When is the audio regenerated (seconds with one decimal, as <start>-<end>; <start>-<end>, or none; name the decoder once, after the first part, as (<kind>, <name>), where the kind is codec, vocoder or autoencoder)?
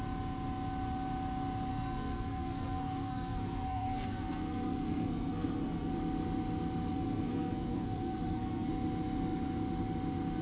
1.7-5.9 (codec, SNAC); 6.9-8.7